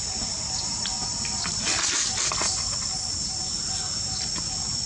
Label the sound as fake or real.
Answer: real